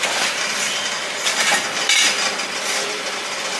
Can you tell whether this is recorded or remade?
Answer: remade